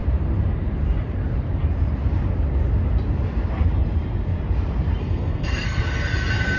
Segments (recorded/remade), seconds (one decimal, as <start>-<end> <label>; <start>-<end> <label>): 0.0-5.0 recorded; 5.0-5.8 remade; 5.8-6.6 recorded

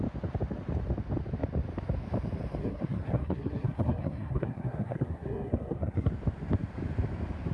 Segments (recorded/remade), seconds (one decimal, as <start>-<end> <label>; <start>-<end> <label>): 0.0-2.6 recorded; 2.6-6.1 remade; 6.1-7.5 recorded